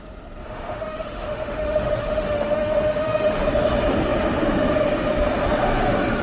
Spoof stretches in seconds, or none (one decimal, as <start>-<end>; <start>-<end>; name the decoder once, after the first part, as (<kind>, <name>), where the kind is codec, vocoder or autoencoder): 0.4-3.4 (autoencoder, DAC-VAE)